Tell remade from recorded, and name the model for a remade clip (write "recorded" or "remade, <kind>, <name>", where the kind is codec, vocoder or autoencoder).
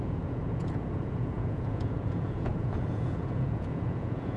remade, vocoder, Vocos